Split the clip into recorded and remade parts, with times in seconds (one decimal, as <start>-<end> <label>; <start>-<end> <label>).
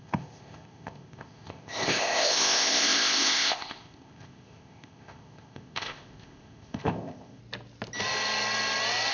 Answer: 0.0-7.4 remade; 7.4-9.1 recorded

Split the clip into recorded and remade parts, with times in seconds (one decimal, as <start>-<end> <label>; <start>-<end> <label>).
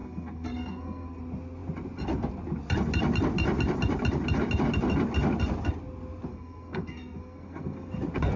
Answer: 0.0-1.2 remade; 1.2-6.3 recorded; 6.3-7.9 remade; 7.9-8.4 recorded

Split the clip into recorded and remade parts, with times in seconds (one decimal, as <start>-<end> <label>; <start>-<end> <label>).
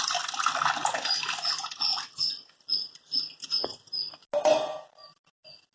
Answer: 0.0-5.7 recorded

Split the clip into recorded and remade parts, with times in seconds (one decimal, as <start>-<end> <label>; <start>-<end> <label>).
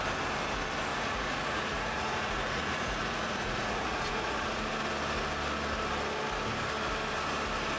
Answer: 0.0-0.9 recorded; 0.9-4.6 remade; 4.6-7.8 recorded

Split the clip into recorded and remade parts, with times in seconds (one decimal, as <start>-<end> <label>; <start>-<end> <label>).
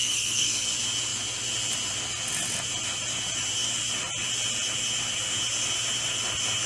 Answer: 0.0-0.7 remade; 0.7-6.7 recorded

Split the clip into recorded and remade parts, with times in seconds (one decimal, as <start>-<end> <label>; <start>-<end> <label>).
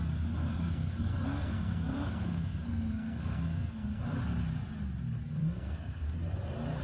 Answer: 0.0-0.5 recorded; 0.5-4.0 remade; 4.0-5.4 recorded; 5.4-6.0 remade; 6.0-6.8 recorded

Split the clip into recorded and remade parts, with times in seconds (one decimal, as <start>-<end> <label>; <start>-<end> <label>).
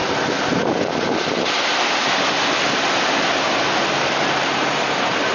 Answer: 0.0-1.7 recorded; 1.7-5.3 remade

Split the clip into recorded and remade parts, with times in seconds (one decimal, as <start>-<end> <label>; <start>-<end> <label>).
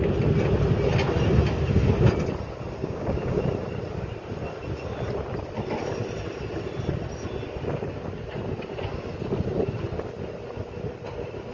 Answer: 0.0-2.8 recorded; 2.8-3.4 remade; 3.4-11.5 recorded